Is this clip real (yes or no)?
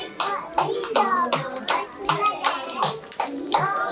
no